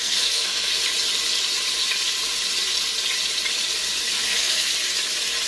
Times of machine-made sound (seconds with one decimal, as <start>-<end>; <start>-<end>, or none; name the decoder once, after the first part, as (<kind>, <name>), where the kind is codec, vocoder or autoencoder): 0.0-0.7 (codec, SNAC); 4.0-4.7